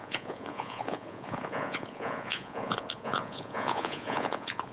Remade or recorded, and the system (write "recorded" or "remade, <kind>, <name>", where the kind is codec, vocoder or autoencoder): remade, vocoder, Vocos